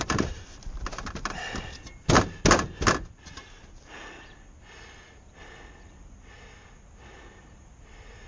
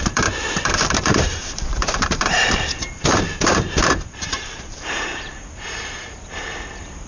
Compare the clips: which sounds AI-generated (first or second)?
second